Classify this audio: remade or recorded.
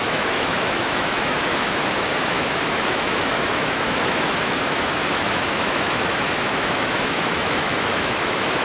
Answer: remade